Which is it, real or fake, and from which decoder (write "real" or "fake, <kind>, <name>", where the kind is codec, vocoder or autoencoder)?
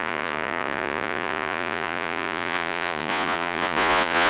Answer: fake, vocoder, Vocos